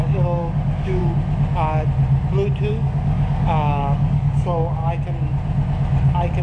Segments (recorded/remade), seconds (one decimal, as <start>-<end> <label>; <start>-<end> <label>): 0.0-1.0 remade; 1.0-2.7 recorded; 2.7-4.8 remade; 4.8-6.4 recorded